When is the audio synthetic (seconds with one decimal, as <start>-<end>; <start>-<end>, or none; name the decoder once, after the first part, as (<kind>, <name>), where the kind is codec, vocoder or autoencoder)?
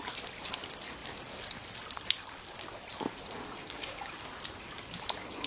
3.6-4.1 (codec, DAC)